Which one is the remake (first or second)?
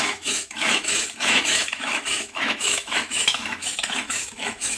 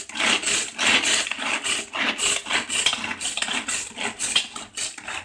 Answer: first